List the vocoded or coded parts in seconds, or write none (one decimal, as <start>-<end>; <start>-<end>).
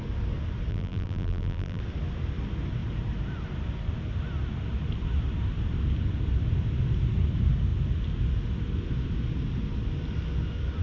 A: 0.7-1.8